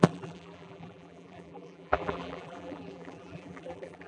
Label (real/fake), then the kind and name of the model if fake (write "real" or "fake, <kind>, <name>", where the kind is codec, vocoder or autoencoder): fake, vocoder, BigVGAN v2